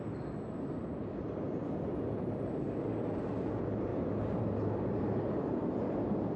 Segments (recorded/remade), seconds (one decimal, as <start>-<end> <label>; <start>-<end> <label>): 0.0-3.9 recorded; 3.9-4.4 remade; 4.4-6.4 recorded